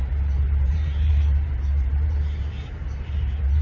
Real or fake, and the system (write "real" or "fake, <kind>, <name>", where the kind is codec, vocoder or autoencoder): fake, vocoder, BigVGAN v2